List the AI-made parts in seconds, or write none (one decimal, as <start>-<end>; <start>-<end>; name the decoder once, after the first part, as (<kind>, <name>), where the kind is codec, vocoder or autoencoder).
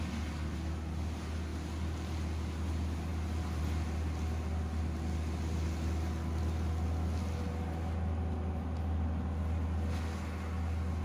none